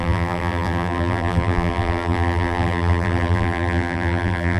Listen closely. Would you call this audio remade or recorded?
remade